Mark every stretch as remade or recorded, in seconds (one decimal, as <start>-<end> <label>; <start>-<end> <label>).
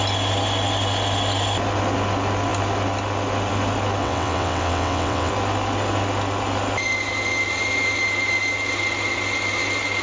0.0-4.0 recorded; 4.0-5.3 remade; 5.3-10.0 recorded